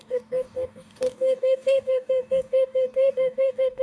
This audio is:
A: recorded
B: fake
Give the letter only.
B